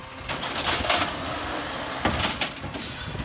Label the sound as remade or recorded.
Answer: recorded